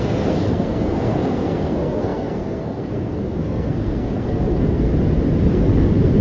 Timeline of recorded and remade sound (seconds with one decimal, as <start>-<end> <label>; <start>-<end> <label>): 0.0-4.9 remade; 4.9-5.5 recorded; 5.5-6.2 remade